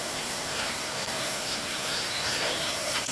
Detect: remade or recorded remade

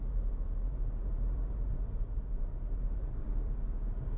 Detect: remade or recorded remade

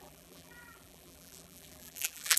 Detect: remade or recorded remade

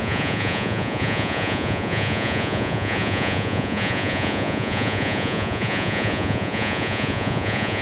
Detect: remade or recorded remade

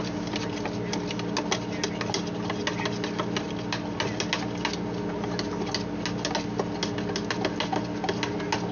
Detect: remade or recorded recorded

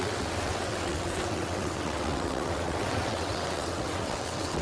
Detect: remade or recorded remade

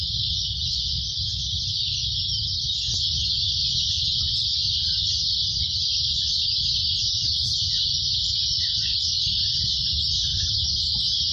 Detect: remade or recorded recorded